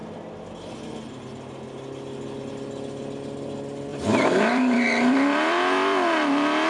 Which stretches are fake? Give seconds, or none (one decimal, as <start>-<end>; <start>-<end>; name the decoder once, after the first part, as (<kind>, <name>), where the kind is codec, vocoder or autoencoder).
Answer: 3.9-6.7 (vocoder, BigVGAN v2)